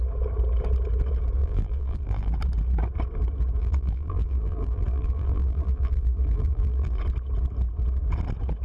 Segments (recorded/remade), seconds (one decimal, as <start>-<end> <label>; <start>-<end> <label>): 0.0-1.4 recorded; 1.4-2.3 remade; 2.3-3.6 recorded; 3.6-7.0 remade; 7.0-8.6 recorded